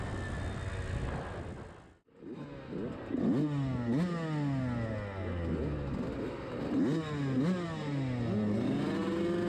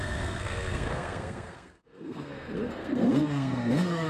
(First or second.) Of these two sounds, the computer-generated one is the second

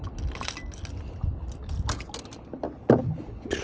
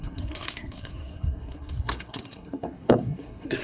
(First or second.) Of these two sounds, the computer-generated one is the second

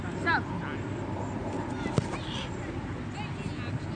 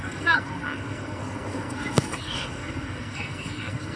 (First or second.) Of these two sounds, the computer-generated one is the second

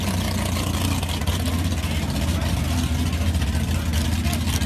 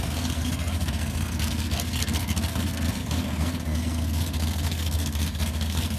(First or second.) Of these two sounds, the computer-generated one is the second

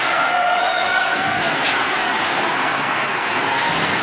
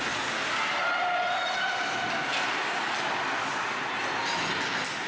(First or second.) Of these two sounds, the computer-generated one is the first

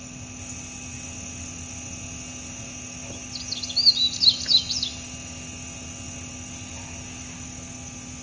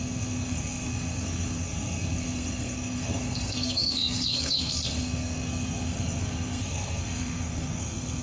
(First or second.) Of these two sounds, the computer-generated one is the second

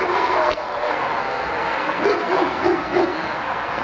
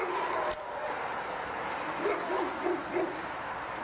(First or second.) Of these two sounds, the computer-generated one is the first